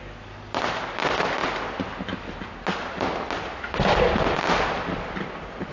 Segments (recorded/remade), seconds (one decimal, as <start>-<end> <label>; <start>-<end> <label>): 0.0-5.7 recorded